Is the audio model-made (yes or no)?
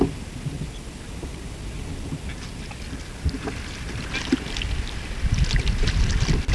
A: no